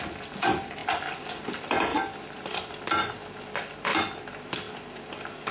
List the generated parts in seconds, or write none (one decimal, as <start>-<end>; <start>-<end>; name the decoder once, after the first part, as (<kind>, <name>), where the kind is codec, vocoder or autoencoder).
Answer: 1.9-2.7 (vocoder, BigVGAN v2)